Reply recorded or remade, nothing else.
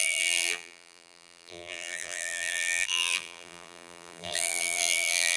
remade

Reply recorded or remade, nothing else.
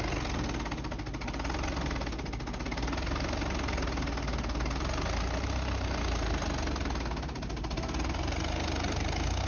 recorded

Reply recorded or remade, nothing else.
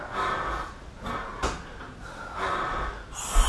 recorded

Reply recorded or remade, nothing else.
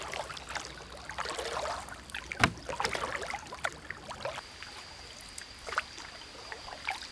recorded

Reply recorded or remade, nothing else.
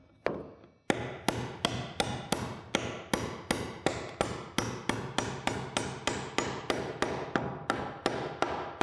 recorded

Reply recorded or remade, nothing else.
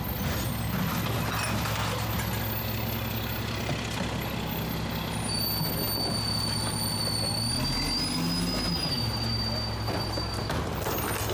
recorded